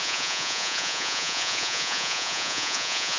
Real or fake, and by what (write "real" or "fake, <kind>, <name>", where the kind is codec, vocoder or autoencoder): fake, vocoder, Vocos